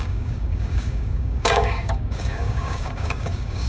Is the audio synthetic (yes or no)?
yes